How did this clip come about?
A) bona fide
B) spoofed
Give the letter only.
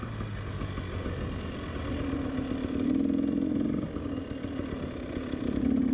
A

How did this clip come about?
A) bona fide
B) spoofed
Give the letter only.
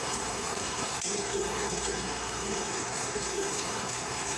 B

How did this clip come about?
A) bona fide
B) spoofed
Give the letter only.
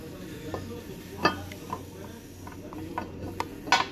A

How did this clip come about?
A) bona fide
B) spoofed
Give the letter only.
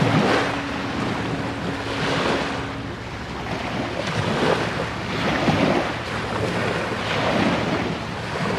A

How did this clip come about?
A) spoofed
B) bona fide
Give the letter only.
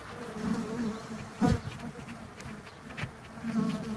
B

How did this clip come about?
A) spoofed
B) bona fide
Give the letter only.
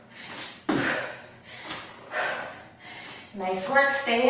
B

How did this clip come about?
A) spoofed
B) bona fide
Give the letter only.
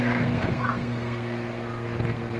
A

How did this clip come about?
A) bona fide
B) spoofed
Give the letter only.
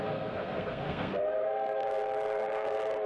B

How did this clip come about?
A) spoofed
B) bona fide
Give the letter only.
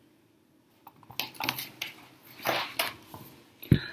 B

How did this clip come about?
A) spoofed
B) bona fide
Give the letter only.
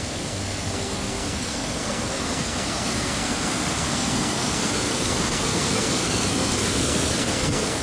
A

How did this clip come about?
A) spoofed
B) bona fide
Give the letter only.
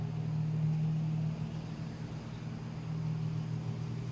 B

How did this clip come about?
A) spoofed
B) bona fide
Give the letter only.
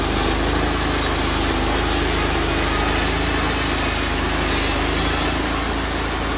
B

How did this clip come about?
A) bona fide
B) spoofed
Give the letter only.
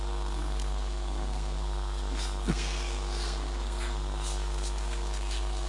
B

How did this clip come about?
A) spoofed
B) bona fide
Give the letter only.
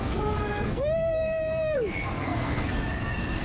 A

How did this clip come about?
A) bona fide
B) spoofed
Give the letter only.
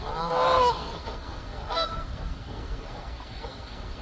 B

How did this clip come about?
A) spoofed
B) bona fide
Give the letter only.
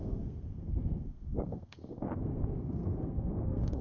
A